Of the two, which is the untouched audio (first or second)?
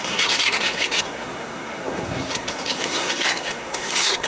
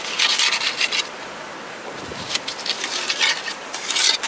second